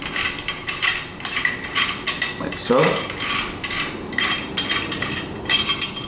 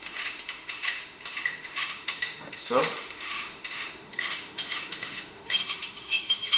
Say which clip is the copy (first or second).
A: second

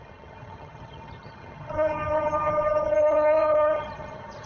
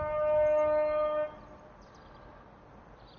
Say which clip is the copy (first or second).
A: first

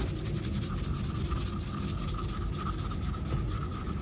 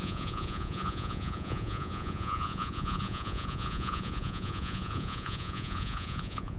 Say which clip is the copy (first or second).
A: second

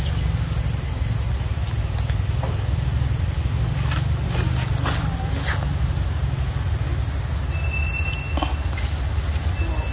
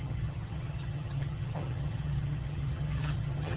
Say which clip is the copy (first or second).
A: second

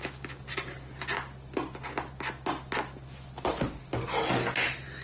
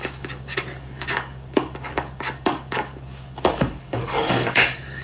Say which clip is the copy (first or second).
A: second